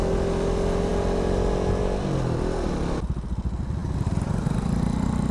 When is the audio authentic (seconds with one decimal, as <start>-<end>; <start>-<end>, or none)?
0.0-5.3

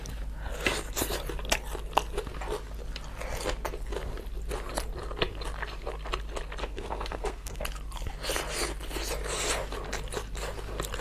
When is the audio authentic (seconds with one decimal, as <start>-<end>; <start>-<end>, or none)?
0.0-6.6; 7.6-11.0

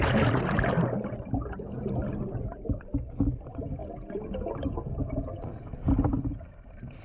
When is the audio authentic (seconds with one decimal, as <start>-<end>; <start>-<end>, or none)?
0.0-7.0

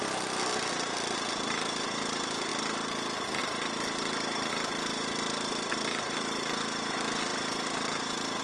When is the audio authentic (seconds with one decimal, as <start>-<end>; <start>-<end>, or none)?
0.0-8.4